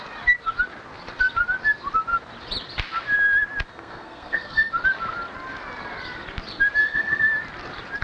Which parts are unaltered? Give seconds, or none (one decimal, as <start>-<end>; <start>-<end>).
0.0-3.7; 4.7-6.8; 7.3-8.0